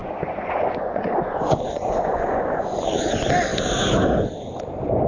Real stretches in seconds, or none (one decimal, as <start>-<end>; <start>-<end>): 3.1-5.1